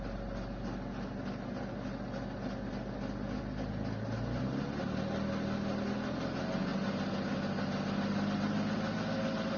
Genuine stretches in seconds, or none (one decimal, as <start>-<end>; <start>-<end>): 0.0-9.6